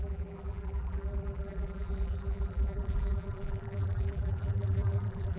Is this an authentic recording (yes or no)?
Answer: no